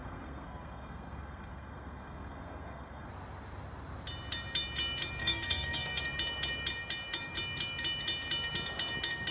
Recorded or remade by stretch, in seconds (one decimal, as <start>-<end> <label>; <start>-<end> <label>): 0.0-3.1 remade; 3.1-5.2 recorded; 5.2-6.0 remade; 6.0-9.3 recorded